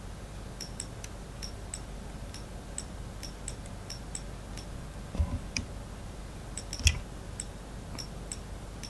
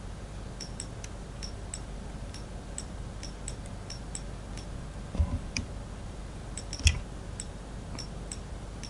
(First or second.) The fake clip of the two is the second